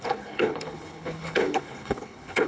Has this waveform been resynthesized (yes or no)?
yes